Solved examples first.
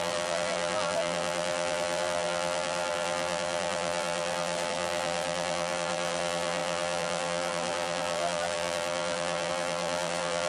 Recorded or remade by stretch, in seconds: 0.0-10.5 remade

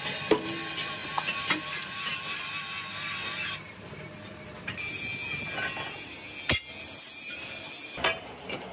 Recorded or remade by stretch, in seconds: 0.0-2.1 remade; 2.1-3.9 recorded; 3.9-5.1 remade; 5.1-8.2 recorded; 8.2-8.7 remade

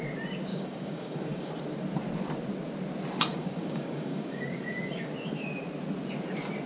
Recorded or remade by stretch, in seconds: 0.0-0.5 recorded; 0.5-1.5 remade; 1.5-3.3 recorded; 3.3-5.1 remade; 5.1-6.7 recorded

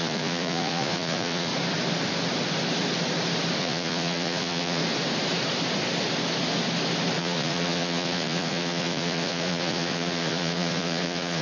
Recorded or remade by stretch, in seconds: 0.0-1.5 remade; 1.5-3.6 recorded; 3.6-4.8 remade; 4.8-7.2 recorded; 7.2-11.4 remade